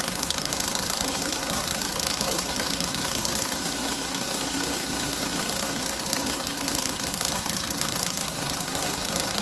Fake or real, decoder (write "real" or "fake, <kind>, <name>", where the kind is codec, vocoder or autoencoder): fake, codec, SNAC